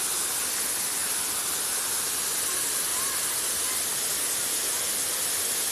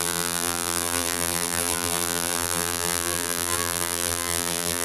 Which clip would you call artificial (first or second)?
second